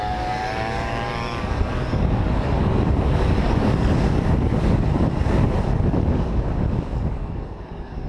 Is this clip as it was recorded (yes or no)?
no